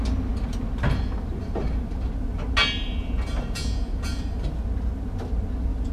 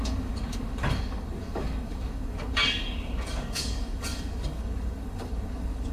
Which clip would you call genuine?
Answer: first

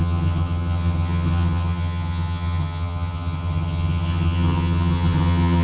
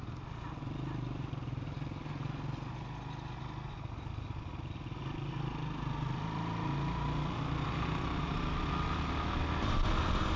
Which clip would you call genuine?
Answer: second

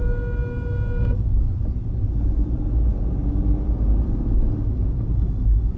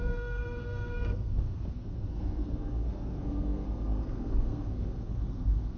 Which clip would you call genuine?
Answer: first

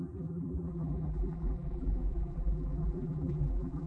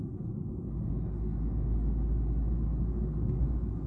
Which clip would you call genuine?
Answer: second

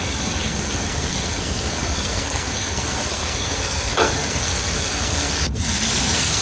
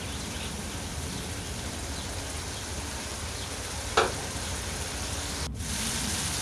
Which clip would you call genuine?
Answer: second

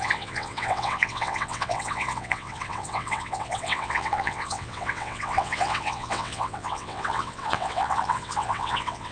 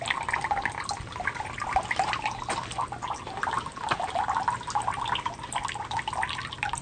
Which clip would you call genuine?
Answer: second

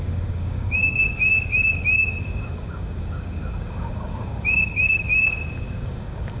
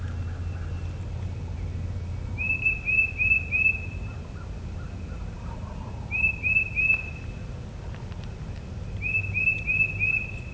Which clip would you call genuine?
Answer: second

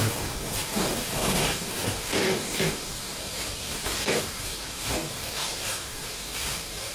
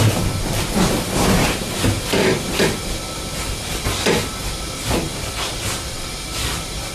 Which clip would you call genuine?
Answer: second